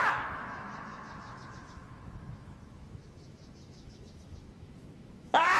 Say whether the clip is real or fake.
fake